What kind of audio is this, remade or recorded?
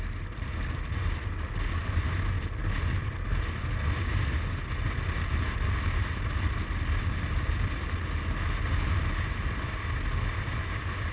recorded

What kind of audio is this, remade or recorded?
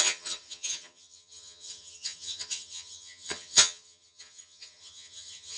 remade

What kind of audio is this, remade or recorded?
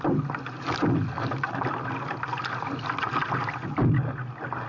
recorded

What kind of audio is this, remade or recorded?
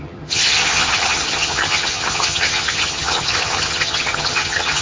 remade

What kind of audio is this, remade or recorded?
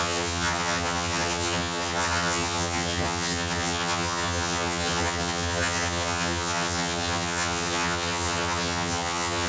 remade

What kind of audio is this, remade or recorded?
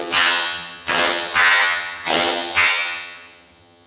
remade